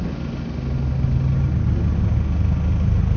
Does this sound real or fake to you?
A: real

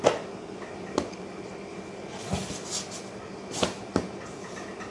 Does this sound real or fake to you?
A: real